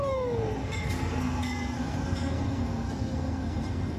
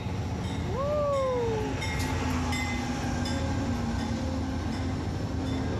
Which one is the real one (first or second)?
second